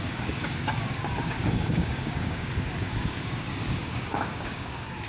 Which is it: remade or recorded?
remade